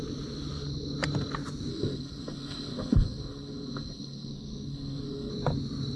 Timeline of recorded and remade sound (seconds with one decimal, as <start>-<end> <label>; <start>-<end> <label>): 0.0-1.7 recorded; 1.7-5.3 remade; 5.3-6.0 recorded